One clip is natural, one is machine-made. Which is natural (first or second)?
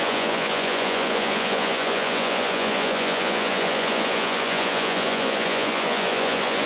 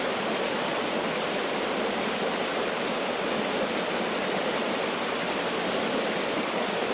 second